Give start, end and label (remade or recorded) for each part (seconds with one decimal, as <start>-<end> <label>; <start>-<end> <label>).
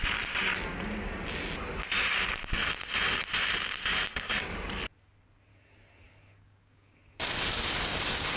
0.0-5.5 recorded; 5.5-8.4 remade